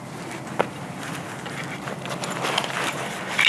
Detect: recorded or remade recorded